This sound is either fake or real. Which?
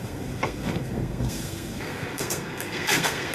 fake